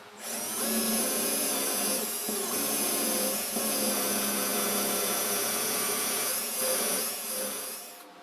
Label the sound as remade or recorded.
remade